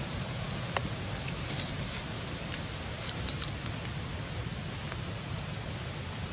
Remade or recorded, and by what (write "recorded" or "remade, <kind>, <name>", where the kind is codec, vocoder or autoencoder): recorded